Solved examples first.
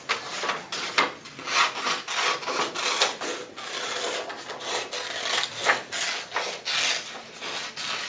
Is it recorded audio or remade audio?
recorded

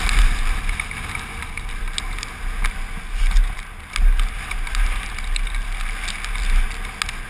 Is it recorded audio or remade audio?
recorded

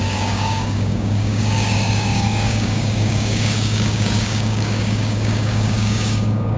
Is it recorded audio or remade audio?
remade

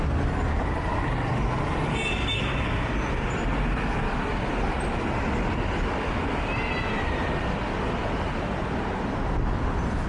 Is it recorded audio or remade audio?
recorded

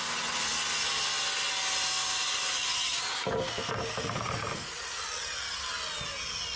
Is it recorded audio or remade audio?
recorded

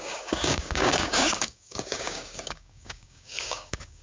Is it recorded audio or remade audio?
remade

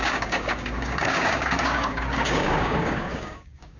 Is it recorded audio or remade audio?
remade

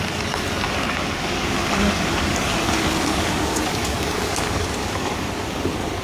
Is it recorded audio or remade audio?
remade